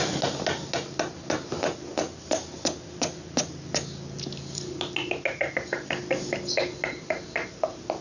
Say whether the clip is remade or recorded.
recorded